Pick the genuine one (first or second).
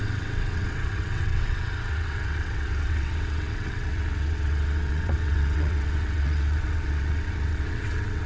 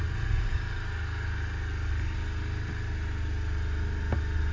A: second